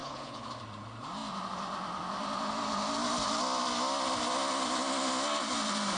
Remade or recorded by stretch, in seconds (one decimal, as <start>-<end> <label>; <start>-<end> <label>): 0.0-0.5 remade; 0.5-6.0 recorded